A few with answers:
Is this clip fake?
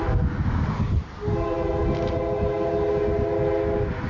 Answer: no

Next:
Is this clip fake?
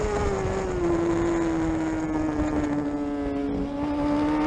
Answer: no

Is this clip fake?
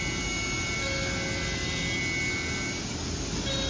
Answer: no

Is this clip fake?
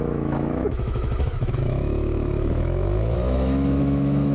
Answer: yes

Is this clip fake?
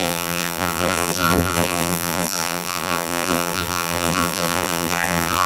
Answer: yes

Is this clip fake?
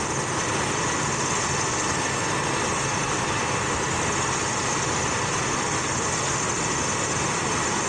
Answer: no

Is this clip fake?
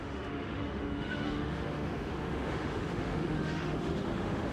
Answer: yes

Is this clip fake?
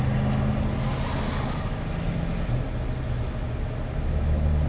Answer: no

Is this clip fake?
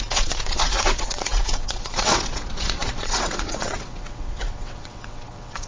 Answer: yes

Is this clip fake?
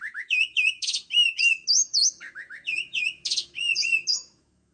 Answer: yes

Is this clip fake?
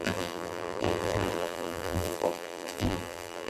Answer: yes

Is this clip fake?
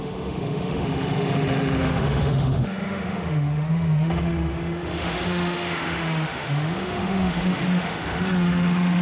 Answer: yes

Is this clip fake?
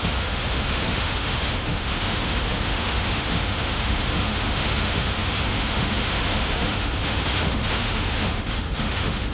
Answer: yes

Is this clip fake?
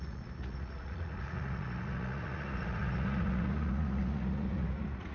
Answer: yes